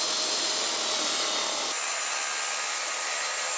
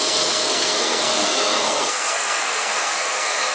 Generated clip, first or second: second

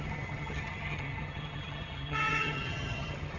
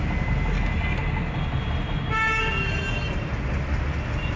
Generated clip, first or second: first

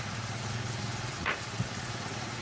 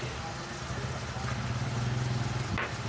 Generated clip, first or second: first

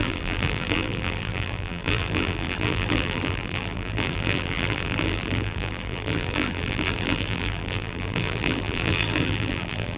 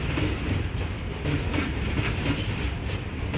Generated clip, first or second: first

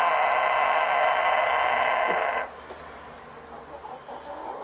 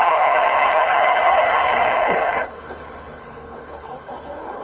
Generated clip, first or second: second